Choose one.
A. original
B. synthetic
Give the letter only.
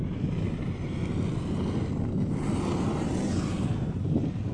A